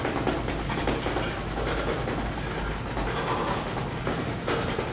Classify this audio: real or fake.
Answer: real